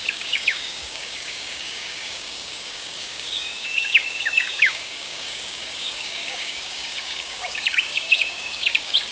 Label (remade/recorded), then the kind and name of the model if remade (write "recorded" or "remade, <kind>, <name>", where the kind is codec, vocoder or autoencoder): remade, codec, DAC